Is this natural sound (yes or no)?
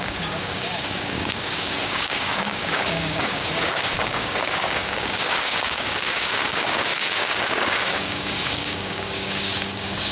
no